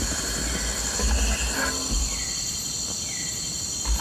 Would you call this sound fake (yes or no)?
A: no